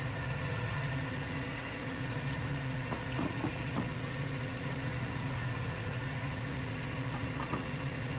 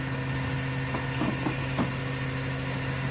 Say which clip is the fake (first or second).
first